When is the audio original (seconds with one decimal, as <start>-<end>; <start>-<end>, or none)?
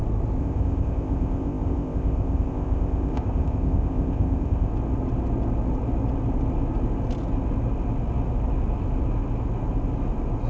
0.0-0.4; 4.7-10.5